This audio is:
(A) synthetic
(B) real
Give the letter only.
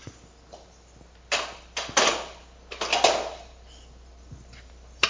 B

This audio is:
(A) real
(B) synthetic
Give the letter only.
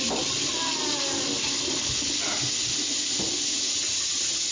A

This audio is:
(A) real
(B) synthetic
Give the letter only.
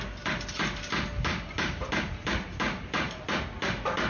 A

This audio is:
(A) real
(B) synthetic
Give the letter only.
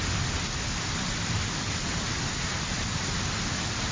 A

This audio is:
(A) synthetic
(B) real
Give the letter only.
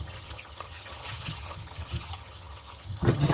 A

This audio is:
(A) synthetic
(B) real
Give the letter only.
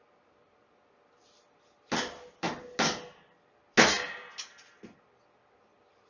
B